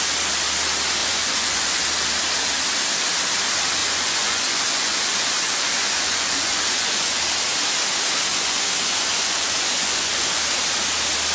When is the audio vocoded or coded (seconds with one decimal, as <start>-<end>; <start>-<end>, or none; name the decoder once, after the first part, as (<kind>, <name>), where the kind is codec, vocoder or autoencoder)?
1.0-1.8 (vocoder, Vocos); 3.8-7.2; 8.3-10.4